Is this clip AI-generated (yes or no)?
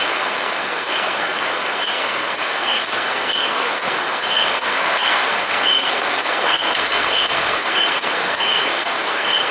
yes